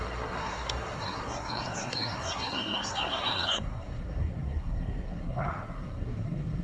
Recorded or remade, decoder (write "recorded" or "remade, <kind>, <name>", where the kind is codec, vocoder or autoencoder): remade, codec, SNAC